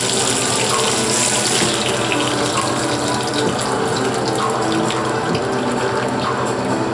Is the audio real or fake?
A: real